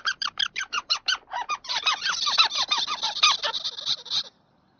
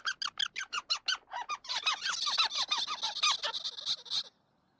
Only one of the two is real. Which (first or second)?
second